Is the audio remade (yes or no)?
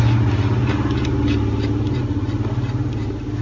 no